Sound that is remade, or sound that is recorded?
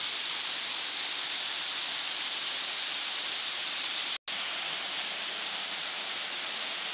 recorded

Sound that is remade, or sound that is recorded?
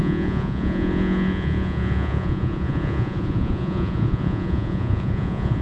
remade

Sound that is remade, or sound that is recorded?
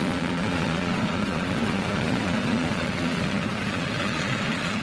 remade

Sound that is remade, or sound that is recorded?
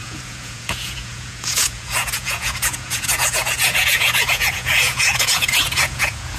remade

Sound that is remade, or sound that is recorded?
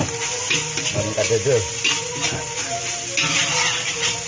recorded